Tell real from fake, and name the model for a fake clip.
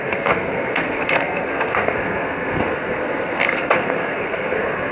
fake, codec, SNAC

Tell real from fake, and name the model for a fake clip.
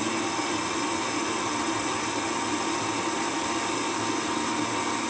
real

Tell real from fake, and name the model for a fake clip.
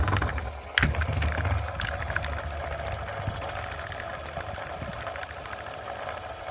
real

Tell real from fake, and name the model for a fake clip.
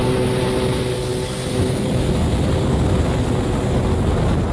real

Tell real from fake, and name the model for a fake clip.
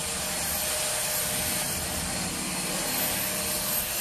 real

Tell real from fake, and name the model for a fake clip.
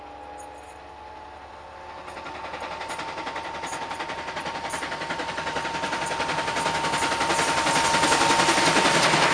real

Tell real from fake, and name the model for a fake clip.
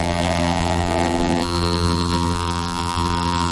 fake, vocoder, BigVGAN v2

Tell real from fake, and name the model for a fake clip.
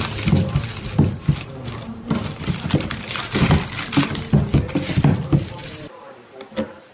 real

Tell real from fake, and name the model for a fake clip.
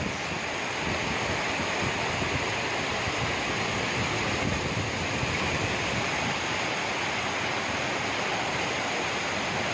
real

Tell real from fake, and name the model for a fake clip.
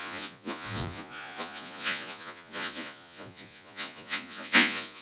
fake, vocoder, Vocos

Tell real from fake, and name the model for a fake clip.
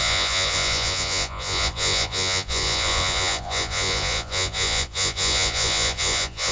fake, vocoder, Vocos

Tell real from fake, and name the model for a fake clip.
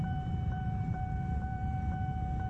fake, vocoder, BigVGAN v2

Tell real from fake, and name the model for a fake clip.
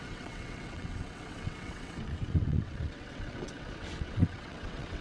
fake, vocoder, WaveNeXt